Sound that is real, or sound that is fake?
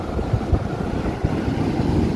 real